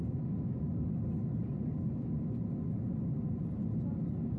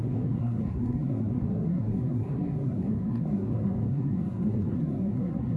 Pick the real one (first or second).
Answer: first